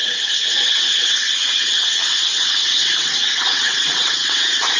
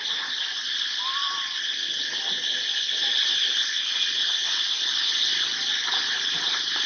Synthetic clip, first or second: first